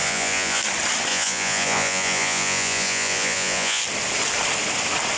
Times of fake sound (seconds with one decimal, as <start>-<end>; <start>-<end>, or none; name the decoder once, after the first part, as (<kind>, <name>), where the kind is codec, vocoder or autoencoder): 0.0-0.6 (vocoder, Vocos); 1.1-3.8